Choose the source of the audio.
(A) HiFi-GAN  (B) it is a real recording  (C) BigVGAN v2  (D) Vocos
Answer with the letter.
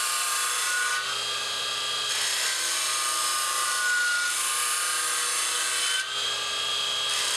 B